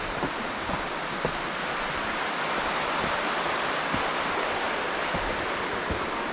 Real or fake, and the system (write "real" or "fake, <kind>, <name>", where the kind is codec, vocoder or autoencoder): real